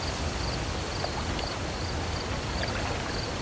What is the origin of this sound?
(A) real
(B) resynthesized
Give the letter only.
A